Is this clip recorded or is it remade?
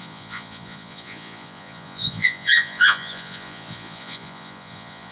remade